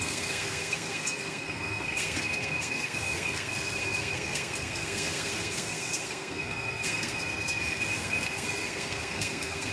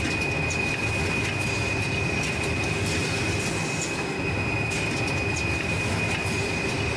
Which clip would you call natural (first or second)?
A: second